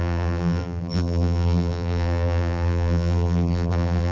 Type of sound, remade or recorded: remade